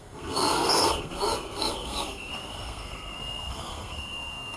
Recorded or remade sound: remade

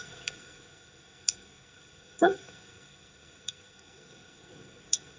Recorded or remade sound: remade